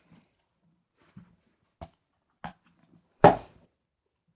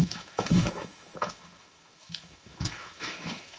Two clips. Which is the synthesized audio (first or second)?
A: second